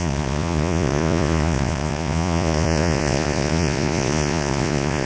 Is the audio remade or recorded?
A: remade